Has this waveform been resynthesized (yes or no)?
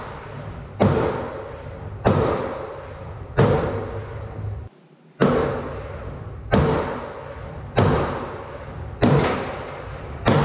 no